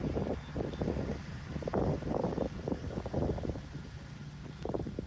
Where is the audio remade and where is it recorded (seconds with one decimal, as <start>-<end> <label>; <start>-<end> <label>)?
0.0-5.1 recorded